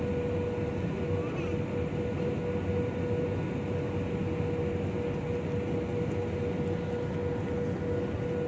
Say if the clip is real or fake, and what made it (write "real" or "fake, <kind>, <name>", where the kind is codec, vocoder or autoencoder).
real